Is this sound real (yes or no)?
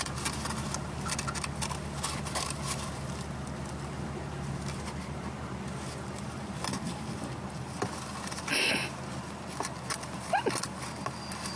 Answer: no